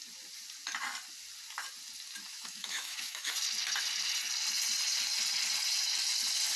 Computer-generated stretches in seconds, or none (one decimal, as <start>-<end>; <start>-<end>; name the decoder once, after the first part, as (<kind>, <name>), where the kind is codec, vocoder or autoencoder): 2.3-3.3 (autoencoder, DAC-VAE)